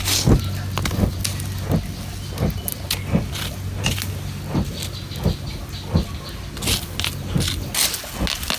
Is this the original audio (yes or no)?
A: yes